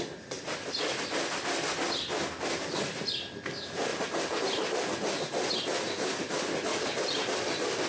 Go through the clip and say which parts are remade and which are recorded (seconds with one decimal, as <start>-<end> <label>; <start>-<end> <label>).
0.0-7.9 recorded